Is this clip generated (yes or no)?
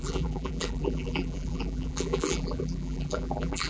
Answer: yes